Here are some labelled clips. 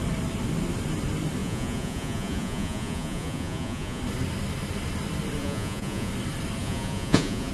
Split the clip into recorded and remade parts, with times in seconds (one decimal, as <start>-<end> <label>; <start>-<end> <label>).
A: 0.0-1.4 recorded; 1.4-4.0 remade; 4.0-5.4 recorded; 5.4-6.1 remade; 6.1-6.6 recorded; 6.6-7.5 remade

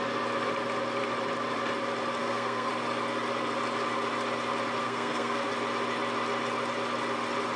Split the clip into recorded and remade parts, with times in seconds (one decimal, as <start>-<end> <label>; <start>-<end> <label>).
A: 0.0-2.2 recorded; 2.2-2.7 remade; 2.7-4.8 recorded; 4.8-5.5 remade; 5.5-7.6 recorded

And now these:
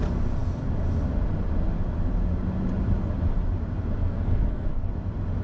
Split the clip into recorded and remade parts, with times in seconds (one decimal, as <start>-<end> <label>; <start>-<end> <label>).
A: 0.0-4.0 recorded; 4.0-4.9 remade; 4.9-5.4 recorded

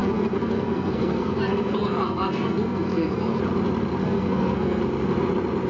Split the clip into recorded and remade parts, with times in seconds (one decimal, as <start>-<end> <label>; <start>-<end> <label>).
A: 0.0-3.4 remade; 3.4-4.0 recorded; 4.0-4.8 remade; 4.8-5.7 recorded

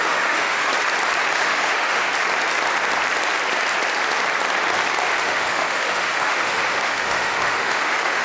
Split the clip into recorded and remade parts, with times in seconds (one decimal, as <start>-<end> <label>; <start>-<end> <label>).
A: 0.0-0.7 remade; 0.7-1.3 recorded; 1.3-2.1 remade; 2.1-5.2 recorded; 5.2-8.2 remade

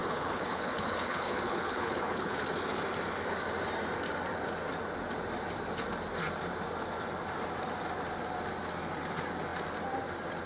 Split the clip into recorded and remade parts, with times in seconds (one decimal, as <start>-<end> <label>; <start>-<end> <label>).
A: 0.0-2.4 remade; 2.4-10.5 recorded

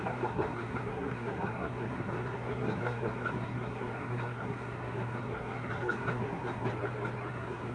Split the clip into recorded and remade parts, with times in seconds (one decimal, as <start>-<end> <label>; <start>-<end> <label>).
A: 0.0-6.7 remade; 6.7-7.3 recorded; 7.3-7.7 remade